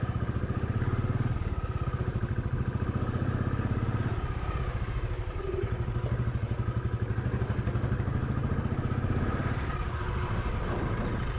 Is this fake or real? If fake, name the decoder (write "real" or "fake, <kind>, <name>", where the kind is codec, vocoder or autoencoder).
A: real